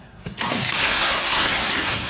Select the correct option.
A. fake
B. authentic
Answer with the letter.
A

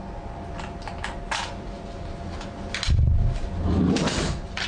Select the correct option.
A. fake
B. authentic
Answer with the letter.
B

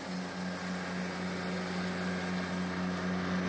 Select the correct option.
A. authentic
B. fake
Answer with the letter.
A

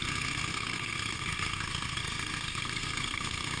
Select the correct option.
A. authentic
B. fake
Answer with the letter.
B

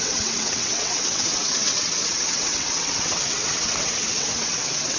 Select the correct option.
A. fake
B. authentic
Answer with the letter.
A